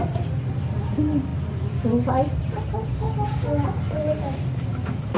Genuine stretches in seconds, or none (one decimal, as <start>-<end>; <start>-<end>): 0.0-5.2